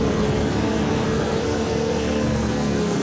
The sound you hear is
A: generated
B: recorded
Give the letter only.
A